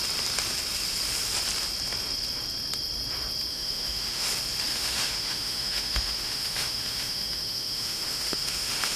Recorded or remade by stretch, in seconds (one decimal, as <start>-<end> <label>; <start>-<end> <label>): 0.0-3.5 recorded; 3.5-4.3 remade; 4.3-4.7 recorded; 4.7-9.0 remade